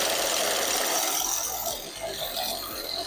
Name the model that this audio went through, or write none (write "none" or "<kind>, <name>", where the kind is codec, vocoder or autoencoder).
none